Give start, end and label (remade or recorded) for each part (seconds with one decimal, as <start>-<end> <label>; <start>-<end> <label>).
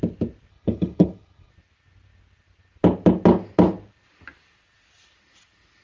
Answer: 0.0-0.5 recorded; 0.5-1.5 remade; 1.5-5.8 recorded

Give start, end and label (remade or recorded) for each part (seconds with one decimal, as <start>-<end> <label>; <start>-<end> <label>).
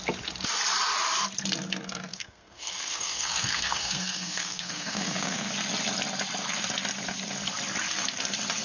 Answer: 0.0-2.1 recorded; 2.1-5.5 remade; 5.5-8.6 recorded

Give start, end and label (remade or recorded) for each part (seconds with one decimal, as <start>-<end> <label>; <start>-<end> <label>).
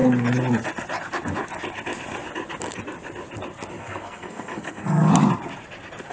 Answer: 0.0-3.7 recorded; 3.7-5.1 remade; 5.1-6.1 recorded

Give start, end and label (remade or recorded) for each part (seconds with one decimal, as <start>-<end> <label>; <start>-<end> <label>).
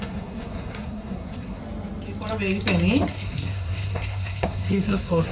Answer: 0.0-1.6 remade; 1.6-3.1 recorded; 3.1-5.3 remade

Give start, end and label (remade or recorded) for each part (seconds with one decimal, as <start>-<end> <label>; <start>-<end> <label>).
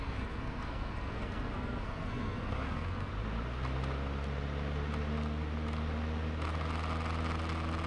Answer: 0.0-3.1 remade; 3.1-7.9 recorded